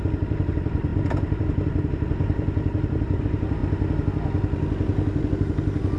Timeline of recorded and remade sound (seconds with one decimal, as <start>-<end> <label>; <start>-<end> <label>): 0.0-3.6 remade; 3.6-6.0 recorded